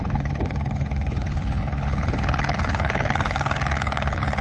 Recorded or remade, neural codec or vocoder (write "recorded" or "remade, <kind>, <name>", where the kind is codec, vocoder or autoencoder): remade, codec, HILCodec